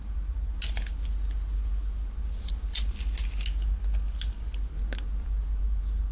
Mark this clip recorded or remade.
recorded